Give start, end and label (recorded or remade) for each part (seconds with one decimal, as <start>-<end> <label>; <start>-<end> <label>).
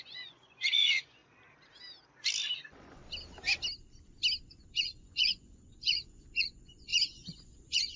0.0-1.2 remade; 1.2-2.6 recorded; 2.6-3.0 remade; 3.0-4.7 recorded; 4.7-8.0 remade